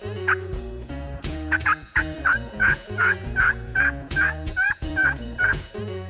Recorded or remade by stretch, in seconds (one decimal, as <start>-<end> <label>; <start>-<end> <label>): 0.0-6.1 remade